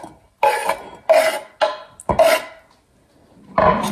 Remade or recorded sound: recorded